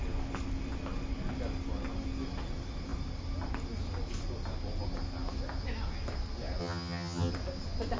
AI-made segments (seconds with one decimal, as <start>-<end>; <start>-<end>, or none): 6.6-7.3